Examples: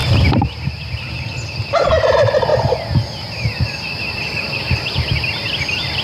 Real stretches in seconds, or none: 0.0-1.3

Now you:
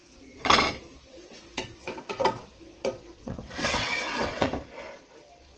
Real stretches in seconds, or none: 0.6-1.1; 4.5-5.6

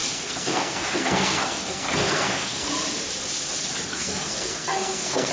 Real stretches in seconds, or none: 2.7-3.9

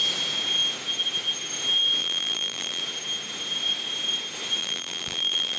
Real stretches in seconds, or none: 0.0-2.0; 2.8-4.6

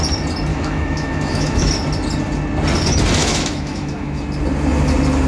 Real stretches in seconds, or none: 0.0-0.5; 1.7-3.2; 4.2-5.3